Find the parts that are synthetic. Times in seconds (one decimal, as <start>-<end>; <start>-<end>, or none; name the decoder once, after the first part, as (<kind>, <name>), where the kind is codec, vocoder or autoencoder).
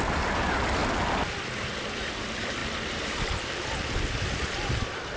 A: 0.0-0.8 (vocoder, BigVGAN v2); 1.9-5.2